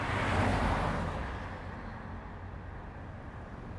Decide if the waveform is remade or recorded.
recorded